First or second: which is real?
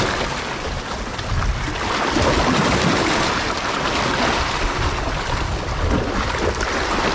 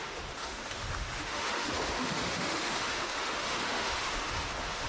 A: first